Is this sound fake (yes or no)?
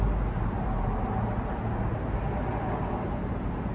no